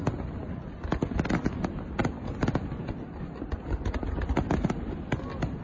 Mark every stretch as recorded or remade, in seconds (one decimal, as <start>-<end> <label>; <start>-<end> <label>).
0.0-0.5 remade; 0.5-2.0 recorded; 2.0-3.5 remade; 3.5-5.6 recorded